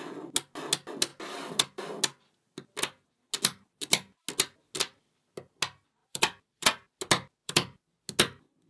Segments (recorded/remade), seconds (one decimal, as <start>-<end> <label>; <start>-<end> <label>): 0.0-6.0 recorded; 6.0-7.0 remade; 7.0-7.4 recorded; 7.4-7.9 remade; 7.9-8.7 recorded